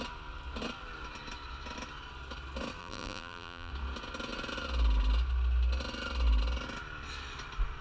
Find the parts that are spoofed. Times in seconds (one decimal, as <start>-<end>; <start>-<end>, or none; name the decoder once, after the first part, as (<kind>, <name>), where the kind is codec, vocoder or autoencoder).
2.8-3.7 (vocoder, BigVGAN v2)